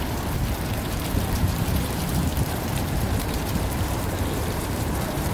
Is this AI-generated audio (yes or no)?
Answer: yes